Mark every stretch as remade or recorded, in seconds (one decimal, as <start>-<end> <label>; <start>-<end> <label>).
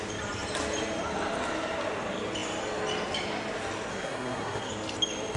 0.0-3.9 recorded; 3.9-4.7 remade; 4.7-5.4 recorded